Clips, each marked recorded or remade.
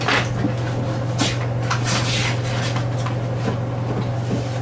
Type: recorded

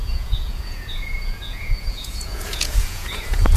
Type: remade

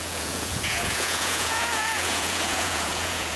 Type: remade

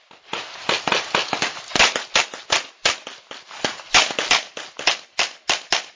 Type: recorded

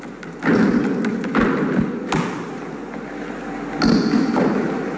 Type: recorded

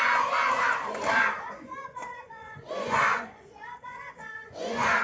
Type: remade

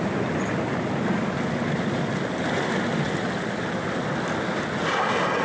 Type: recorded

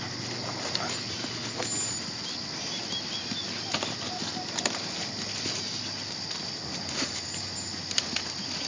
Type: recorded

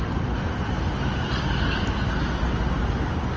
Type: recorded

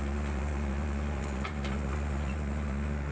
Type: remade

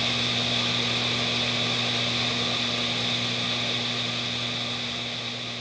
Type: recorded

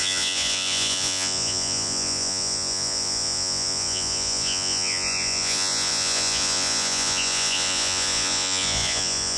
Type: remade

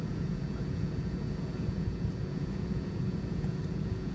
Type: remade